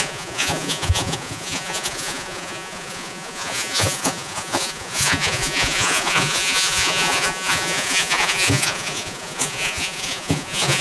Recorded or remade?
remade